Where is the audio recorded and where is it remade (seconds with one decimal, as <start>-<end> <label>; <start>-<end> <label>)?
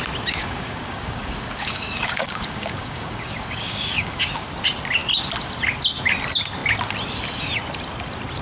0.0-0.4 recorded; 0.4-4.5 remade; 4.5-8.4 recorded